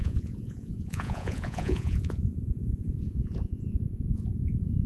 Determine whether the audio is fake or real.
fake